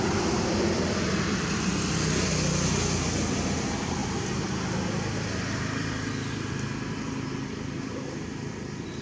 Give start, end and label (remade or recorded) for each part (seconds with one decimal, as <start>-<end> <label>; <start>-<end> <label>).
0.0-9.0 recorded